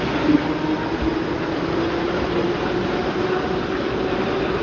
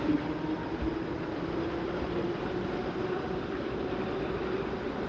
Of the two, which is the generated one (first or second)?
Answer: second